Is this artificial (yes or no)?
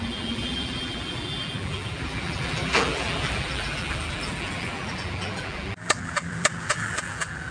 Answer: yes